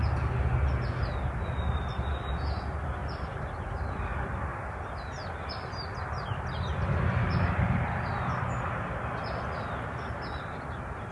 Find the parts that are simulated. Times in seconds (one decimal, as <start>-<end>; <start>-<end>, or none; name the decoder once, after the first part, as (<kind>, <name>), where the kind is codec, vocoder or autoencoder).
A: none